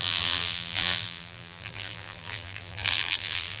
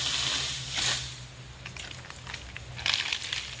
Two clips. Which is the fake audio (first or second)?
first